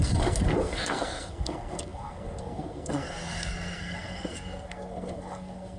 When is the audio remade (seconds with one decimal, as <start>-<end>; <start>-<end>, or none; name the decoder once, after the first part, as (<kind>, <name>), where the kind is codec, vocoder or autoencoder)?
0.0-5.8 (codec, SNAC)